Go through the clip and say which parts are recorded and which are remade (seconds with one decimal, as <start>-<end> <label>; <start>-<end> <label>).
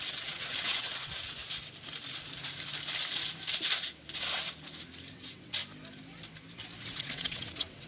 0.0-1.4 remade; 1.4-5.1 recorded; 5.1-5.6 remade; 5.6-6.8 recorded; 6.8-7.9 remade